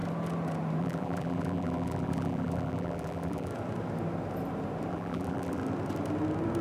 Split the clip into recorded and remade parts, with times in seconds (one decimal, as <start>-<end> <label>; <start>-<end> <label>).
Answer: 0.0-0.8 recorded; 0.8-3.5 remade; 3.5-4.9 recorded; 4.9-5.6 remade; 5.6-6.6 recorded